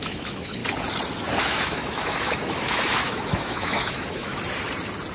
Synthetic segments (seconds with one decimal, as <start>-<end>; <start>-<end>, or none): 0.0-0.6; 1.4-4.3